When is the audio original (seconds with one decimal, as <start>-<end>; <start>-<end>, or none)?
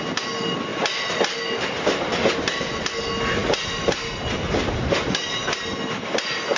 0.0-6.6